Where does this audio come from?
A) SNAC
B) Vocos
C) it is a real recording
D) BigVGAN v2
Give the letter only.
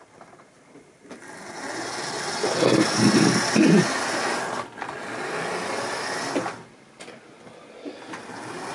C